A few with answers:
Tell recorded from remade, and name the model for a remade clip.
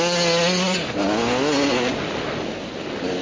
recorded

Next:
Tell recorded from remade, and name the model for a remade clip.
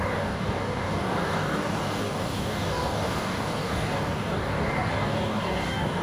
remade, codec, DAC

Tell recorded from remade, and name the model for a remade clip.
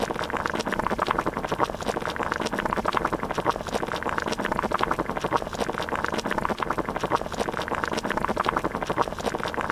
recorded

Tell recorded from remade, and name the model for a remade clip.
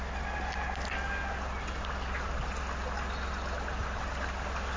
recorded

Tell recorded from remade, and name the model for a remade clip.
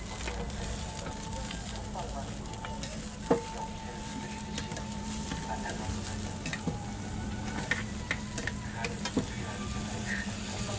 recorded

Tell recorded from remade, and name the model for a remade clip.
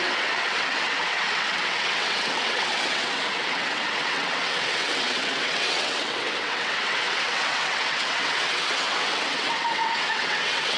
remade, vocoder, WaveNeXt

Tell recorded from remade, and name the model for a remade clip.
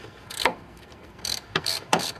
remade, codec, SNAC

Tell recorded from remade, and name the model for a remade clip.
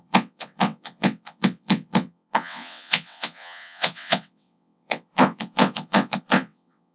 remade, vocoder, WaveNeXt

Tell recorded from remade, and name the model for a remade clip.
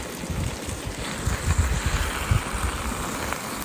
recorded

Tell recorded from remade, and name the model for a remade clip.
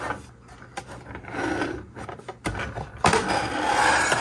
recorded